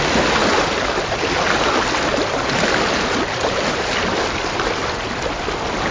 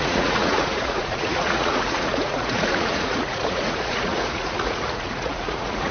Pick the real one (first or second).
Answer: first